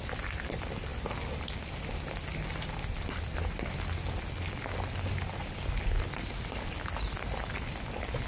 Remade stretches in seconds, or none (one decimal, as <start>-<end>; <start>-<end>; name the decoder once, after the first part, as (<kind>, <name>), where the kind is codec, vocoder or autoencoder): none